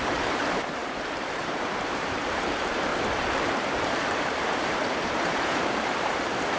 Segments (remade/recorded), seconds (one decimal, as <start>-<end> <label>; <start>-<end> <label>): 0.0-2.9 remade; 2.9-3.5 recorded; 3.5-6.6 remade